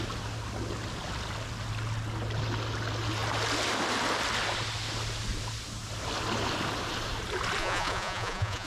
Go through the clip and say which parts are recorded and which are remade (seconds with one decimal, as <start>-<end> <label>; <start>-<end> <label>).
0.0-7.6 recorded; 7.6-8.7 remade